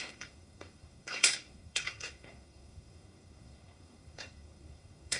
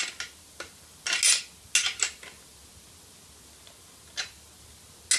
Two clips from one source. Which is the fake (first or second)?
first